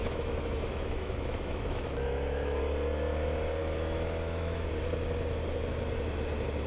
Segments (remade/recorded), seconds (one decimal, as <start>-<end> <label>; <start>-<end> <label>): 0.0-2.6 remade; 2.6-3.6 recorded; 3.6-4.7 remade; 4.7-6.7 recorded